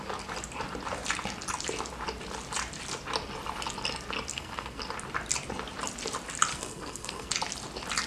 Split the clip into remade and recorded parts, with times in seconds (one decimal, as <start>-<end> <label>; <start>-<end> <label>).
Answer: 0.0-4.3 recorded; 4.3-4.8 remade; 4.8-6.5 recorded; 6.5-7.3 remade; 7.3-8.1 recorded